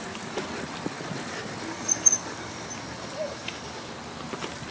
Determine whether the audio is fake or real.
real